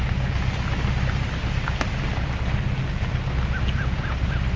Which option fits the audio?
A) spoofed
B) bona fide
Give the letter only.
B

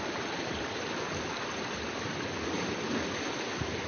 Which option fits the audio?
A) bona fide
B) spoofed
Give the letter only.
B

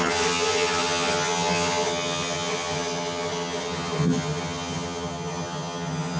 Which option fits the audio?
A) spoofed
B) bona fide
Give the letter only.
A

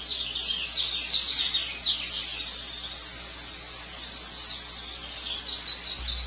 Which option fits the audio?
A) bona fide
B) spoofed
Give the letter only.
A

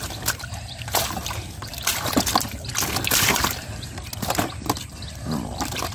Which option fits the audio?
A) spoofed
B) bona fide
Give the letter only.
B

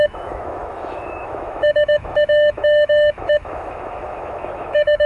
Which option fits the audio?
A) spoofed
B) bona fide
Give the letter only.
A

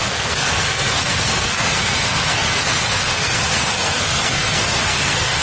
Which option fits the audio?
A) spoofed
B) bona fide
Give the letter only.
A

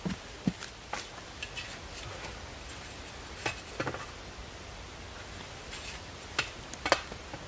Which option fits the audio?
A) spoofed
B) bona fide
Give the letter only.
B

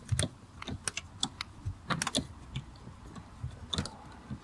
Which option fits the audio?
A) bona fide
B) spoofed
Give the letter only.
A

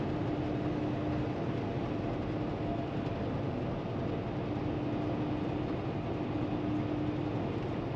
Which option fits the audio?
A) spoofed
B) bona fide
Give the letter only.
B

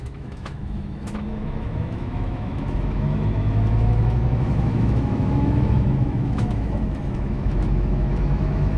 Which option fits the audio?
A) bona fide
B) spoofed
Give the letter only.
B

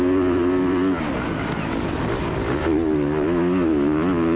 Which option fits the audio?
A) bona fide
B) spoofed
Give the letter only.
A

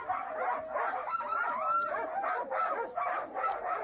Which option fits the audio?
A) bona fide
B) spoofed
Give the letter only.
A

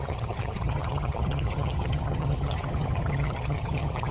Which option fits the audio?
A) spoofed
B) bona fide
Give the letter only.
A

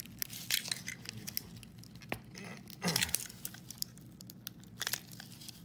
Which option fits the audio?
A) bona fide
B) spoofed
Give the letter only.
A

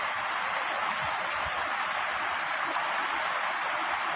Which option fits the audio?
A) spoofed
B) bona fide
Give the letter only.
B